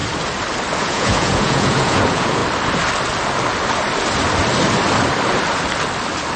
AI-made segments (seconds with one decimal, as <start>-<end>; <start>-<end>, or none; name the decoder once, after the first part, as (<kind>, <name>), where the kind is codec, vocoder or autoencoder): 0.8-2.4 (vocoder, Vocos)